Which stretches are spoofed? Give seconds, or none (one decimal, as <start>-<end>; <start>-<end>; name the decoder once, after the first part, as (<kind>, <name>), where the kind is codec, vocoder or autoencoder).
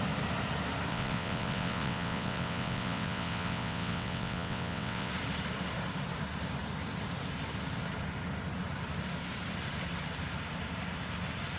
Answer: 0.9-5.1 (vocoder, WaveNeXt)